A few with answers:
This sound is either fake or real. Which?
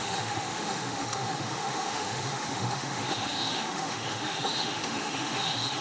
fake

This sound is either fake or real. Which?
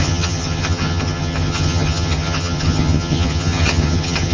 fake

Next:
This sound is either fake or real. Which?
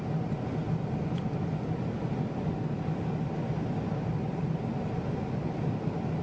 real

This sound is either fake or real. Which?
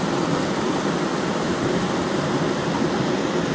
real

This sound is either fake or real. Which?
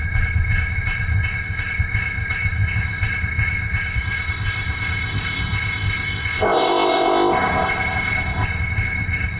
fake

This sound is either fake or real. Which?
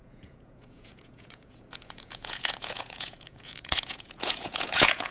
fake